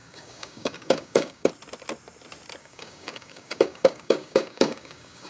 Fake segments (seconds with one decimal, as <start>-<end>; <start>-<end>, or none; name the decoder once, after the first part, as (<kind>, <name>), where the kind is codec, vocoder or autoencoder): 0.0-1.5 (codec, DAC); 2.6-5.3